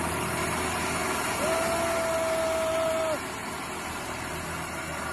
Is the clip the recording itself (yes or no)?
yes